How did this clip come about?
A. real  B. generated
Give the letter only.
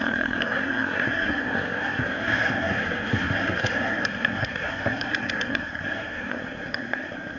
B